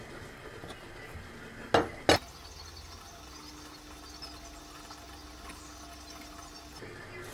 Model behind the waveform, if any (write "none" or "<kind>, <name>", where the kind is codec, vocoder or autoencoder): none